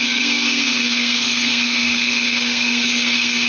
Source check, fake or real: fake